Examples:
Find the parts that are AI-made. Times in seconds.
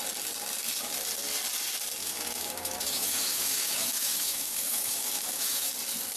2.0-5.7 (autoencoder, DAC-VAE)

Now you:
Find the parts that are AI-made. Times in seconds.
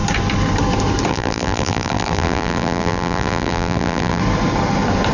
1.1-4.2 (vocoder, BigVGAN v2)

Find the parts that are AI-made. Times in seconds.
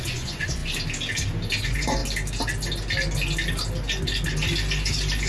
0.0-0.6 (vocoder, Vocos); 1.6-2.0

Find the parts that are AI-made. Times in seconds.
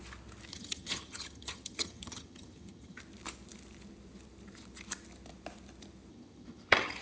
0.5-3.0 (vocoder, HiFi-GAN); 6.1-7.0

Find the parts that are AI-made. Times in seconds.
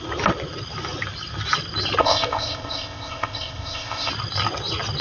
2.0-4.1 (codec, ZipCodec)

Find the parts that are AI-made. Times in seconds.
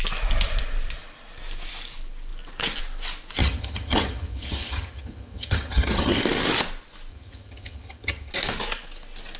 3.4-6.2 (vocoder, HiFi-GAN); 7.1-8.3